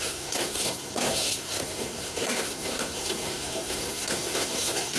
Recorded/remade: remade